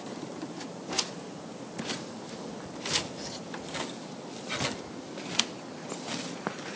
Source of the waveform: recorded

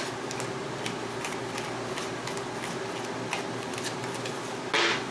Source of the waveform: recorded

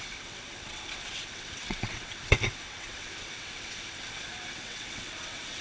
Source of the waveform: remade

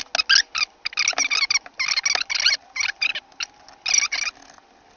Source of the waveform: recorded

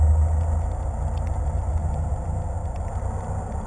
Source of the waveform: recorded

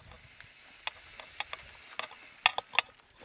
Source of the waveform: recorded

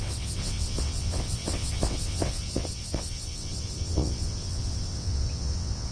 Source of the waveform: remade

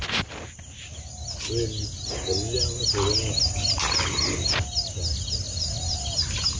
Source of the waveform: recorded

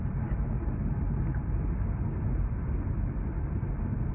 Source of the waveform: recorded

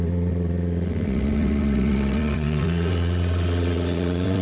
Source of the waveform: remade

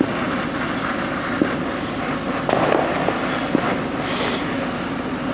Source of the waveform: recorded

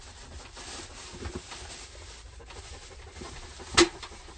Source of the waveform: recorded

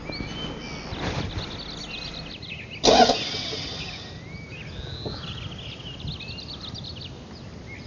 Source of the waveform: recorded